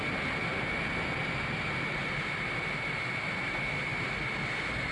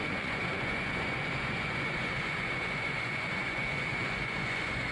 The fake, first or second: second